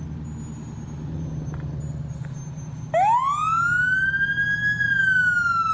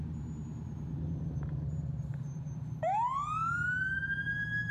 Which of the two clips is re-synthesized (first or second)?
second